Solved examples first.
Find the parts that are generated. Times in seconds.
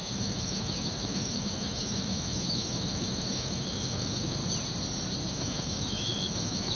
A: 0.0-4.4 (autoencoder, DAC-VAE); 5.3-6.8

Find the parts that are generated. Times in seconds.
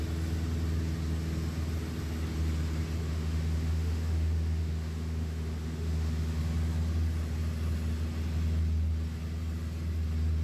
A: 3.0-6.4 (autoencoder, DAC-VAE)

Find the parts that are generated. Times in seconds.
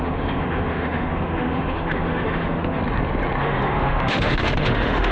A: 0.0-2.8 (autoencoder, DAC-VAE); 3.4-5.1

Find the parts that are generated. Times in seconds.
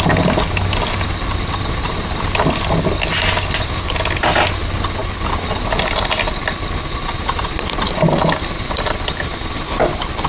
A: none